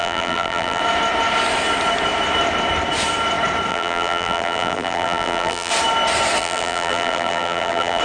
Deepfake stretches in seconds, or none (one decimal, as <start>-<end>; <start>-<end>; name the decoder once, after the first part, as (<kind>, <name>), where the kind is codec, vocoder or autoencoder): 0.0-0.8 (vocoder, BigVGAN v2); 3.7-5.7; 6.4-8.0